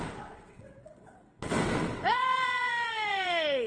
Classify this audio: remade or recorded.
remade